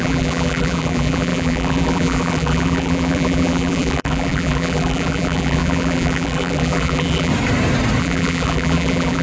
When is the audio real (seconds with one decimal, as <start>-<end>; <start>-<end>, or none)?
7.3-8.0